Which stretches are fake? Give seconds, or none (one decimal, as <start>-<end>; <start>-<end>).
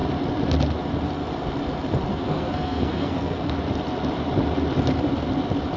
2.1-3.5